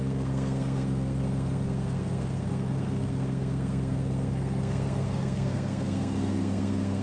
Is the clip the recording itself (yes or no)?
no